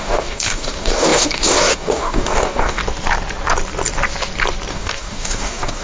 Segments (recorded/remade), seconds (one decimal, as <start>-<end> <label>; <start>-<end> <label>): 0.0-2.8 remade; 2.8-4.7 recorded; 4.7-5.8 remade